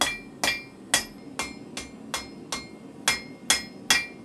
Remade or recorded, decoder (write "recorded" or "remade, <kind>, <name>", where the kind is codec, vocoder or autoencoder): recorded